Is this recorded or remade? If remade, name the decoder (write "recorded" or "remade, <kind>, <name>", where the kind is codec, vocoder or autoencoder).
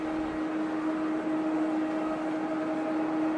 recorded